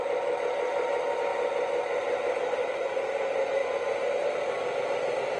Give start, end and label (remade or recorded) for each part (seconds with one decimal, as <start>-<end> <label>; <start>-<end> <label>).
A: 0.0-5.4 recorded